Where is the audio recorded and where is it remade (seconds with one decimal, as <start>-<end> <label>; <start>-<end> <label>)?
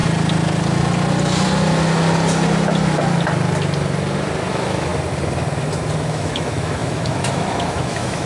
0.0-4.5 recorded; 4.5-4.9 remade; 4.9-6.0 recorded; 6.0-8.3 remade